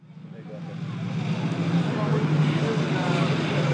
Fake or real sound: real